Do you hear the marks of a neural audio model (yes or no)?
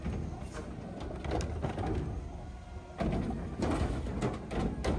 no